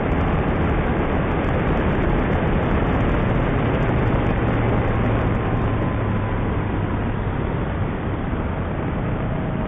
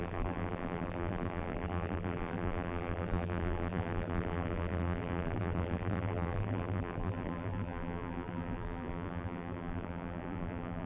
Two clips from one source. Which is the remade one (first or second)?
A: second